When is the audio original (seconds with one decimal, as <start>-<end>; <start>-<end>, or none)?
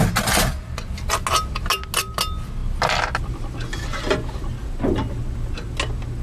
0.0-6.2